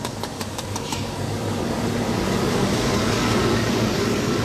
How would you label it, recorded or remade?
remade